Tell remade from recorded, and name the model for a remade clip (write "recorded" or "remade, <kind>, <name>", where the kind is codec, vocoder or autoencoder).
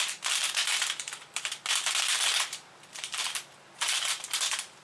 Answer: remade, vocoder, BigVGAN v2